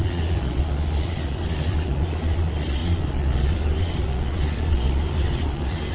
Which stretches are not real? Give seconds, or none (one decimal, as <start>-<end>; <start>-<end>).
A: 0.0-5.9